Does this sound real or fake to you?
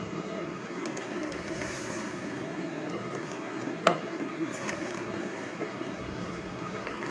fake